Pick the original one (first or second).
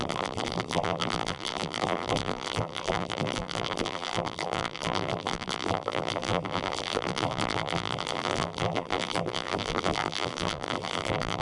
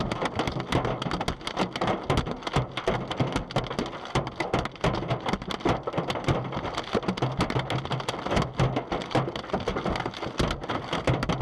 second